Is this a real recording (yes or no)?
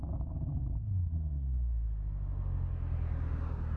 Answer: yes